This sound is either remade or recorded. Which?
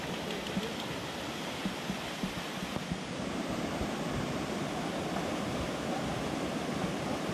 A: recorded